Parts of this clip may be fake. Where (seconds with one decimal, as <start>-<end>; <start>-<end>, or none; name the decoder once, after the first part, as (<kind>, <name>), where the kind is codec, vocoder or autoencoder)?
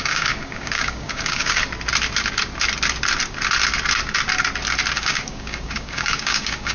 0.0-1.6 (codec, DAC); 5.0-6.7